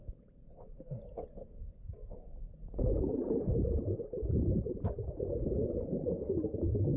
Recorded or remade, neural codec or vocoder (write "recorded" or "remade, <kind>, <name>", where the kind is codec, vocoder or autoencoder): remade, vocoder, BigVGAN v2